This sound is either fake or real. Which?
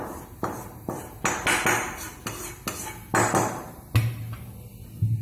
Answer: real